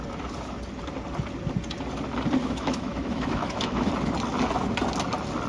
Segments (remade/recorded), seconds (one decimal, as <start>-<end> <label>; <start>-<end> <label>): 0.0-2.4 recorded; 2.4-3.9 remade; 3.9-5.5 recorded